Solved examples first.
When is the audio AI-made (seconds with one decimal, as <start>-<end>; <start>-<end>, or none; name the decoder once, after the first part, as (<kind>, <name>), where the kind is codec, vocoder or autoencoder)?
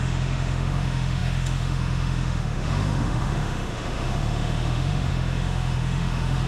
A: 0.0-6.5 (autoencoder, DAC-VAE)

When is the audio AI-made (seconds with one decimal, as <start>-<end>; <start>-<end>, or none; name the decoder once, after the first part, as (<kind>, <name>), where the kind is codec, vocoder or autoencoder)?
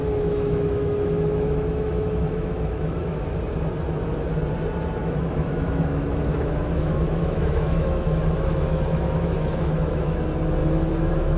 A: 0.0-3.2 (autoencoder, DAC-VAE); 5.0-10.2; 10.6-11.4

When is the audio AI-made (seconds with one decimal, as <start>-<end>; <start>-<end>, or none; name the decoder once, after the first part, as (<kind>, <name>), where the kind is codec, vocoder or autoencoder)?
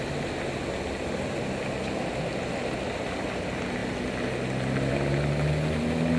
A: none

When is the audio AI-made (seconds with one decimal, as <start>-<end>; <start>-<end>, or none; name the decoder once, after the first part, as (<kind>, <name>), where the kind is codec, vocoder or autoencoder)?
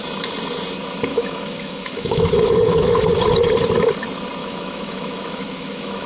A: 1.1-3.0 (autoencoder, DAC-VAE); 4.4-6.1